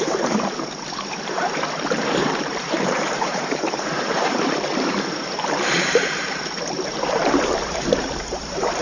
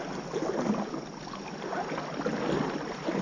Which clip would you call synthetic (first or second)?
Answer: first